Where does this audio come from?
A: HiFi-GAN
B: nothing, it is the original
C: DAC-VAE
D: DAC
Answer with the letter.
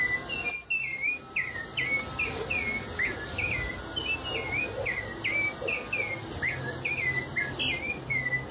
B